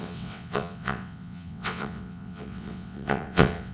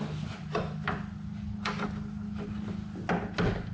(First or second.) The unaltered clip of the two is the second